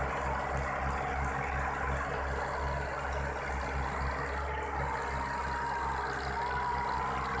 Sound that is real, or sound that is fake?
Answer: real